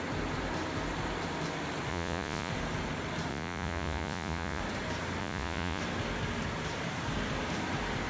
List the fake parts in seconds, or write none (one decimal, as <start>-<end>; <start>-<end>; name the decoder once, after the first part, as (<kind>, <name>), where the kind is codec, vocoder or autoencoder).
1.9-2.5 (vocoder, Vocos); 3.3-4.6; 5.2-5.8